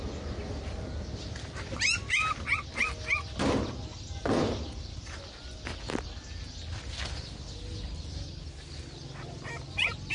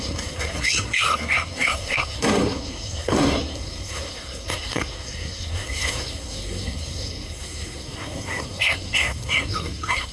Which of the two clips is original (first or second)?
first